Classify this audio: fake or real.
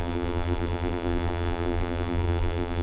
fake